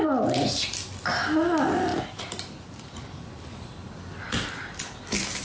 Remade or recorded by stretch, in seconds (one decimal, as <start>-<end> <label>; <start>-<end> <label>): 0.0-5.4 recorded